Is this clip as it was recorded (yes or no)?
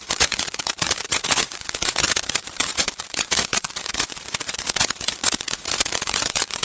no